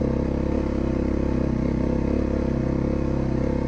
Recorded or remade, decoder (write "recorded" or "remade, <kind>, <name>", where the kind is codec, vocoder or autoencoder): recorded